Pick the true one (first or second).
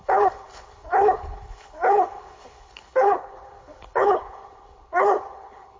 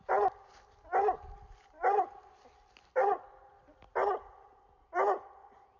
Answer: second